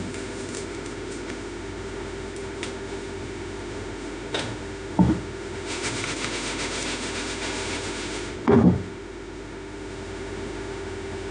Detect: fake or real fake